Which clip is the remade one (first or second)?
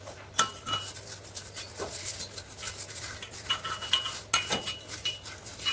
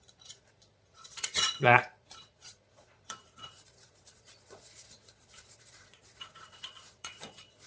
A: second